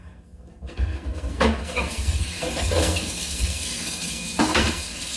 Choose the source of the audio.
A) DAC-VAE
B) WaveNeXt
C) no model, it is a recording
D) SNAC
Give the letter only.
D